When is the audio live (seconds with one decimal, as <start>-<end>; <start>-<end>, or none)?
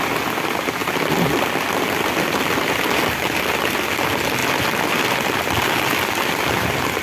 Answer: 0.0-7.0